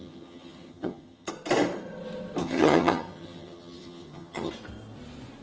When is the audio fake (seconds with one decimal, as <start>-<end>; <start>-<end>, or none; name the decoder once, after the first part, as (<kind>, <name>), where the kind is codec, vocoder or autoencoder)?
0.0-1.3 (vocoder, HiFi-GAN); 2.4-4.5